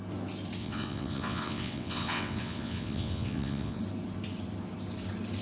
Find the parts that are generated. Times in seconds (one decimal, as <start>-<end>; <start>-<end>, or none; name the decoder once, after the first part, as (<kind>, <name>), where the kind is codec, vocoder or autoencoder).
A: 0.6-3.8 (vocoder, WaveNeXt)

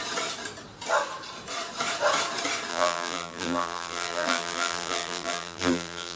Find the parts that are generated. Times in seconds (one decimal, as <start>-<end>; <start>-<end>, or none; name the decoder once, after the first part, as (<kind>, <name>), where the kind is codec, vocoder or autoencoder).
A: 2.7-6.2 (vocoder, BigVGAN v2)

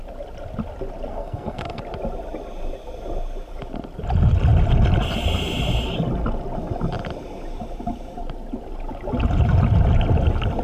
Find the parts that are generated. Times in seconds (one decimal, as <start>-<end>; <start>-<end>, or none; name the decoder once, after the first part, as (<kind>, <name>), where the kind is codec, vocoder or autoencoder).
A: 1.1-1.8 (codec, SNAC)

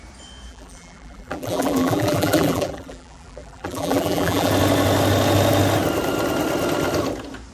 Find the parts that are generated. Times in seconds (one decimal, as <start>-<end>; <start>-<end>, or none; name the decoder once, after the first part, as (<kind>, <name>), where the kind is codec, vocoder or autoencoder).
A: 0.5-4.5 (vocoder, BigVGAN v2)

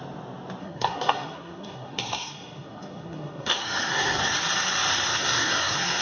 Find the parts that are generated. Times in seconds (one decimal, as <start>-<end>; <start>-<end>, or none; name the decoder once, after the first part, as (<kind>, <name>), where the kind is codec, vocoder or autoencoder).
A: 0.6-4.2 (codec, SNAC); 5.1-6.0